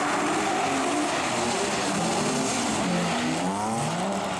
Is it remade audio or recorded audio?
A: recorded